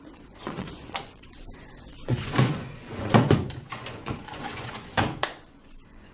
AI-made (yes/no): yes